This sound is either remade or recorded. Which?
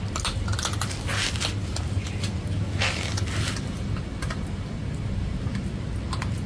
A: recorded